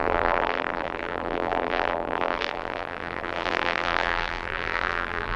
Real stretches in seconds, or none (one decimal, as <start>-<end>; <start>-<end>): none